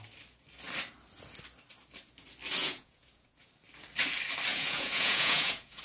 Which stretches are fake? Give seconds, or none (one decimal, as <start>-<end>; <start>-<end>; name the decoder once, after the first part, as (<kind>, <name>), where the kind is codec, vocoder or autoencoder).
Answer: 2.6-3.5 (vocoder, Vocos); 4.5-5.8

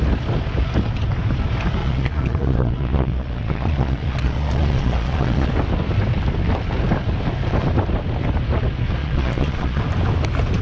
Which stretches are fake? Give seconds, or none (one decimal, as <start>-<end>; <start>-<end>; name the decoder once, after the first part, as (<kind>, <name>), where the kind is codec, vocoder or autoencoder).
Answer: 1.8-5.5 (vocoder, Vocos); 9.0-9.8

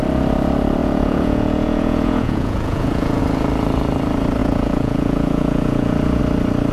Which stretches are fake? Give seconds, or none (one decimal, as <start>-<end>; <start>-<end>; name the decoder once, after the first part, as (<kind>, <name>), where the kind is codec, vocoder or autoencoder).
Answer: 0.8-3.2 (vocoder, Vocos); 4.4-6.2

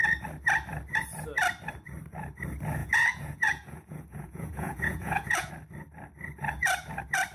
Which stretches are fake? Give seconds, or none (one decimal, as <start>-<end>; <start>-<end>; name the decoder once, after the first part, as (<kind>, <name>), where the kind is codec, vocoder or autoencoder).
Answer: 2.8-5.5 (vocoder, Vocos)

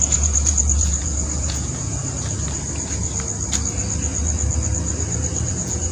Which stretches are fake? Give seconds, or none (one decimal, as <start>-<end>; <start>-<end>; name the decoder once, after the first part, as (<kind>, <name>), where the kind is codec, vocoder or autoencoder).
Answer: 0.0-2.0 (vocoder, Vocos); 5.5-5.9